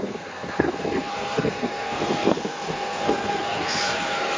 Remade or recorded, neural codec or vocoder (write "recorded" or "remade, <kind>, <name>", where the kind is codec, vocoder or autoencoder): remade, codec, SNAC